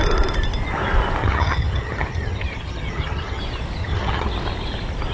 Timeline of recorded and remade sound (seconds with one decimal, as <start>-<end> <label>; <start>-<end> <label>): 0.0-1.2 recorded; 1.2-3.4 remade; 3.4-3.8 recorded; 3.8-4.3 remade; 4.3-5.1 recorded